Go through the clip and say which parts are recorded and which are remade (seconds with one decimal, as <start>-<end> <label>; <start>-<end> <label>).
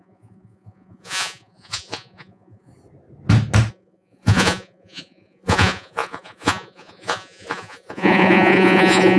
0.0-2.7 remade; 2.7-3.7 recorded; 3.7-9.2 remade